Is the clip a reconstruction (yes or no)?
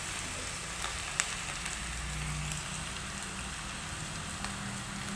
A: no